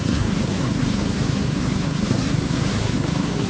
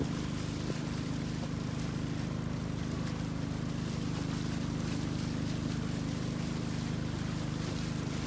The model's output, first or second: first